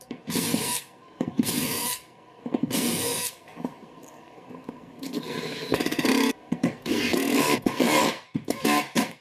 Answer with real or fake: fake